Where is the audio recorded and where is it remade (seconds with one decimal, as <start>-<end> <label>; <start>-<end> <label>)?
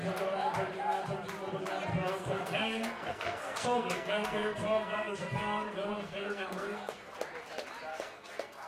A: 0.0-1.9 recorded; 1.9-7.1 remade; 7.1-7.9 recorded; 7.9-8.7 remade